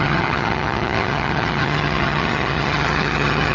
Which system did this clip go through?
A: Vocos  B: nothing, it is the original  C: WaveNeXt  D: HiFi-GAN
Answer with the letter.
D